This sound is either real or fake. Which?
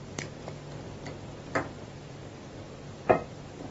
fake